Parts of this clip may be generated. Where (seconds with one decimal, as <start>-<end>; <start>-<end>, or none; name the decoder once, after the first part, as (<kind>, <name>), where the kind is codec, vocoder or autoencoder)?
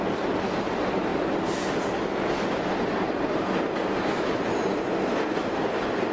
none